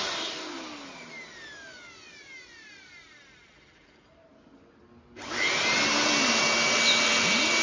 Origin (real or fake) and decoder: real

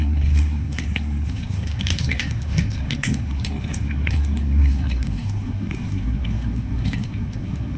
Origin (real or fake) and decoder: fake, codec, SNAC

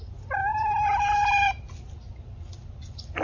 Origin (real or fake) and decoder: real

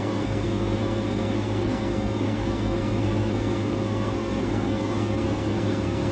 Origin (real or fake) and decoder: fake, codec, SNAC